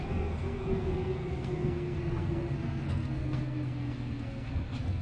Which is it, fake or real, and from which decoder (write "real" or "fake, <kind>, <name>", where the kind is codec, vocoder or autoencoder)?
fake, codec, SNAC